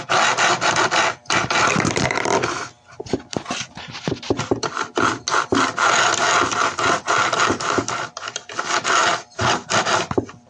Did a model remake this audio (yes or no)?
no